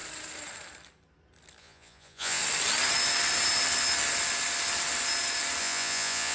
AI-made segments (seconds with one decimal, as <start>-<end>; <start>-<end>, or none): 1.6-2.4; 5.6-6.3